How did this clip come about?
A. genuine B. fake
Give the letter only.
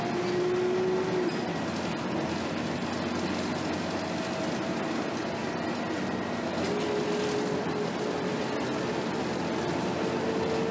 A